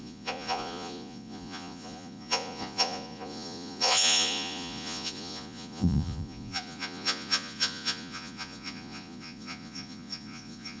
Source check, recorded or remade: remade